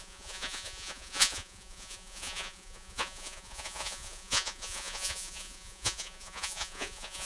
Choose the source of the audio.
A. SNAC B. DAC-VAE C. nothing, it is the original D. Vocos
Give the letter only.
D